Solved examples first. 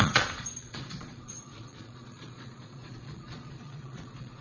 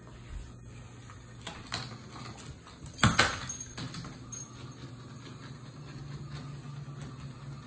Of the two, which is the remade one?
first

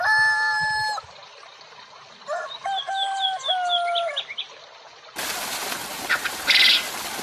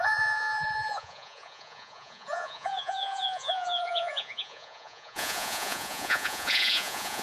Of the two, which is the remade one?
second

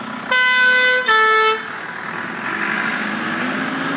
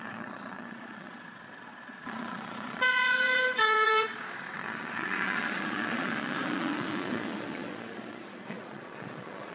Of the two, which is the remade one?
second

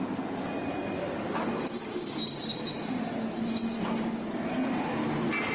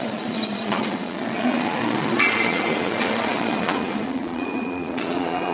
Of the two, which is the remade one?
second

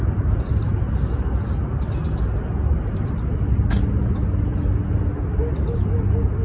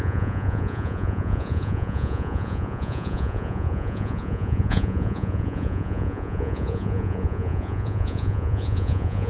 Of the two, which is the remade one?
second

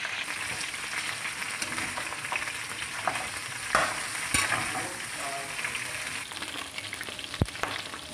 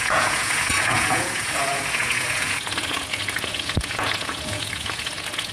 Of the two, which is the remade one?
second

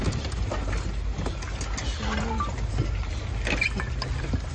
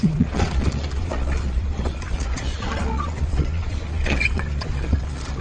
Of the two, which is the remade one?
second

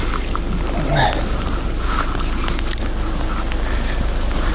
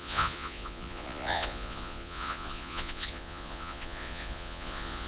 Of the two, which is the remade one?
second